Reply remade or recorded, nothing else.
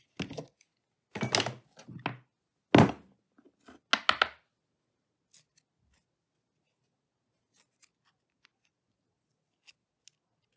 recorded